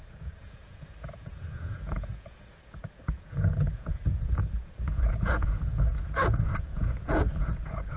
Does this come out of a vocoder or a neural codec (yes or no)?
yes